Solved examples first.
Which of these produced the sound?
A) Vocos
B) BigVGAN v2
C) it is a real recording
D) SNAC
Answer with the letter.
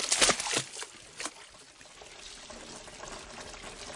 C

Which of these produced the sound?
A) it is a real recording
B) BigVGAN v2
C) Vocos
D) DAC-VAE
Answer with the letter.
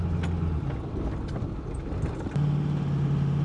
A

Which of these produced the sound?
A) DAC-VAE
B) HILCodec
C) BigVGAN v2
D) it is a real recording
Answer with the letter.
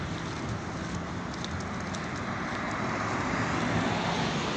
D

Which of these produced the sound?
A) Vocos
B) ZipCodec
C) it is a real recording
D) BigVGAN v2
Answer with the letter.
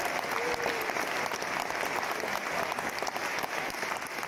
C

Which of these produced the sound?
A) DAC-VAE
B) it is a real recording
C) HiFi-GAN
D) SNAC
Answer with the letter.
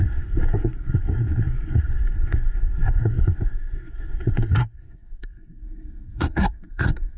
D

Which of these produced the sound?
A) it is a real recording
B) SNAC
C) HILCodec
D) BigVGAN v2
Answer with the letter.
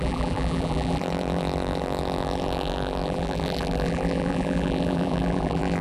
D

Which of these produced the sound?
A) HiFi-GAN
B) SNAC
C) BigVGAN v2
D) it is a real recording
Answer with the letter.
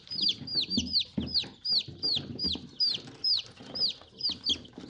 D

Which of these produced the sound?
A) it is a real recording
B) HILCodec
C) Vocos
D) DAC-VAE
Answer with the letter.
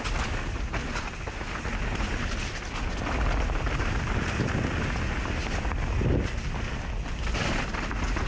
A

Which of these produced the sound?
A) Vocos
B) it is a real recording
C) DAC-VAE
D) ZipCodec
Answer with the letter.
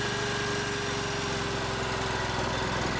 B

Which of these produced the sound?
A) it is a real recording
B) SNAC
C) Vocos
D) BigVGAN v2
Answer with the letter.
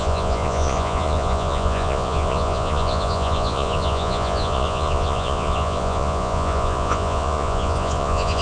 C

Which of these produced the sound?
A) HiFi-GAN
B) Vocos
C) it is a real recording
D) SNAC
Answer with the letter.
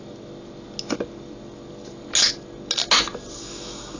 C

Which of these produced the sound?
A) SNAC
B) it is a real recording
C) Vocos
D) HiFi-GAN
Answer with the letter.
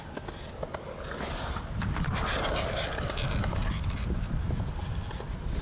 B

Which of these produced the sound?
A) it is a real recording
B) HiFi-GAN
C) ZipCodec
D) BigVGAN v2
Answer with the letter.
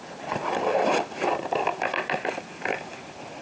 A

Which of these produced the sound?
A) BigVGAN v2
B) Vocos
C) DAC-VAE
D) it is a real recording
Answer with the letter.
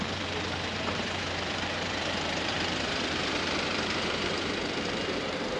A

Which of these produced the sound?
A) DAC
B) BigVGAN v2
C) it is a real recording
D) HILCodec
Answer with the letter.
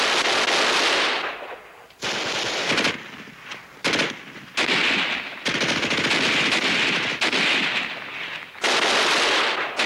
C